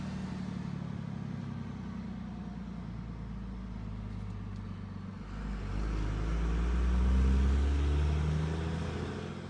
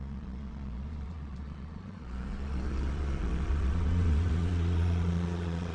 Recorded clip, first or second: first